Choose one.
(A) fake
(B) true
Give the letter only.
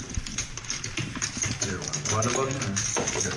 A